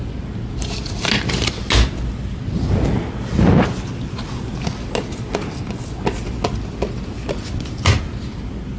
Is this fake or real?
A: real